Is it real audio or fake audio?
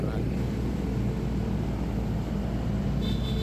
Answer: real